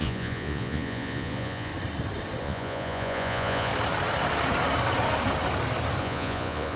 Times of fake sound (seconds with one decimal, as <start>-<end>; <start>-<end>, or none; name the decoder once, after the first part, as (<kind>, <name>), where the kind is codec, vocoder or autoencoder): 0.0-1.7 (vocoder, Vocos); 2.4-3.7; 6.0-6.8